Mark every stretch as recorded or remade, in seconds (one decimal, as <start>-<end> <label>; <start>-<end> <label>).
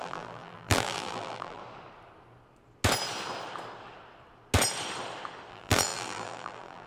0.0-1.6 remade; 1.6-5.5 recorded; 5.5-6.9 remade